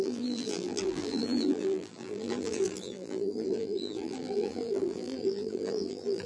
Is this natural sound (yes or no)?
no